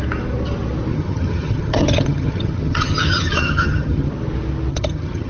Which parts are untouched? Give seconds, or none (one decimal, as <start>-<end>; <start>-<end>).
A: 0.0-0.9; 4.1-4.7